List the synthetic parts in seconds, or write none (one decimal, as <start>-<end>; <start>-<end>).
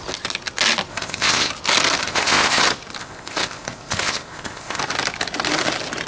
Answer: 0.9-1.5; 2.0-2.6; 3.0-4.8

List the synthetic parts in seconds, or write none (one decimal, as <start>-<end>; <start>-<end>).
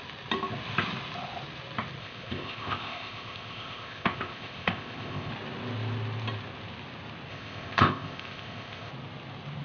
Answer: 2.0-5.3; 7.3-8.9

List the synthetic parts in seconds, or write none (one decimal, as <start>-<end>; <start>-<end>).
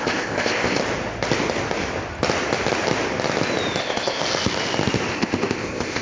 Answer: 0.0-0.8; 3.8-4.2; 5.1-6.0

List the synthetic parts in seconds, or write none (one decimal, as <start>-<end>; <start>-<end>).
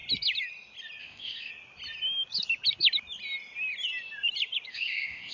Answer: 1.0-1.5; 4.7-5.3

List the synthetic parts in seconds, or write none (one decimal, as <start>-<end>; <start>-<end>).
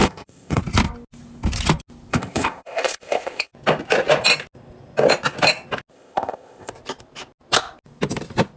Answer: 0.0-0.6; 2.1-3.5; 5.9-6.7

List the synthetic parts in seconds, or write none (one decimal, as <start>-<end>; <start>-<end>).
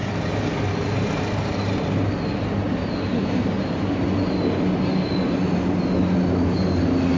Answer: none